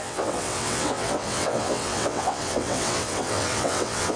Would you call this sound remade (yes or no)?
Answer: yes